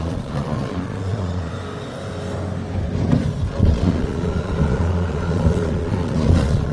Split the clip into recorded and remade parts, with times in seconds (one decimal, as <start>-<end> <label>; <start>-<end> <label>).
0.0-1.5 remade; 1.5-3.5 recorded; 3.5-6.7 remade